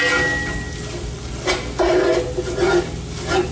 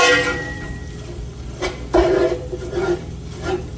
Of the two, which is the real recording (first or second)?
first